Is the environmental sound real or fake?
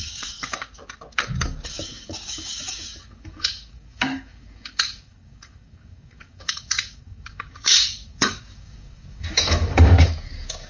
fake